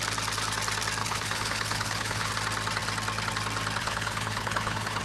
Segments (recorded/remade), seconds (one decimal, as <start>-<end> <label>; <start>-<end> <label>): 0.0-1.0 recorded; 1.0-2.3 remade; 2.3-3.8 recorded; 3.8-5.0 remade